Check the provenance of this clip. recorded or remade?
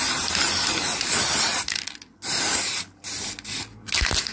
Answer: recorded